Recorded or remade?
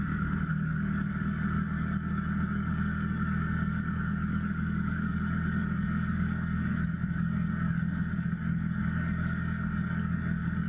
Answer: remade